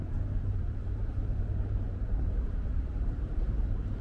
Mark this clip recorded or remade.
remade